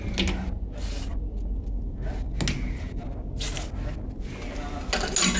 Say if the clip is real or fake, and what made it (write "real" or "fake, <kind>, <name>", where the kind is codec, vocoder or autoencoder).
real